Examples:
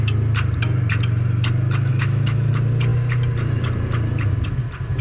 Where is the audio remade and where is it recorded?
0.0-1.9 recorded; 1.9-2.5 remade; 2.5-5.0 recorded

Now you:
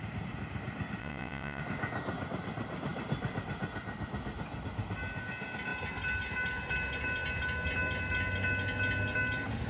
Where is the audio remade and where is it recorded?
0.0-1.0 recorded; 1.0-1.6 remade; 1.6-9.7 recorded

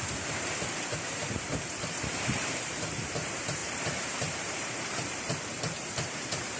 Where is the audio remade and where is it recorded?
0.0-6.6 remade

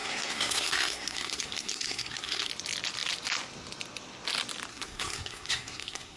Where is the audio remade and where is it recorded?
0.0-2.5 remade; 2.5-4.7 recorded; 4.7-6.2 remade

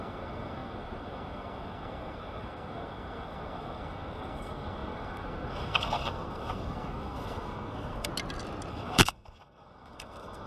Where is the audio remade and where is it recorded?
0.0-8.1 remade; 8.1-8.7 recorded; 8.7-10.5 remade

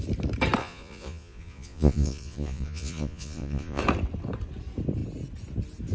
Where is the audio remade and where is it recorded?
0.0-0.6 recorded; 0.6-3.8 remade; 3.8-5.9 recorded

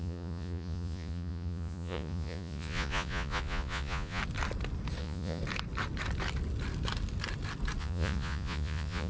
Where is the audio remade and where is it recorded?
0.0-4.2 remade; 4.2-5.0 recorded; 5.0-5.4 remade; 5.4-7.8 recorded; 7.8-9.1 remade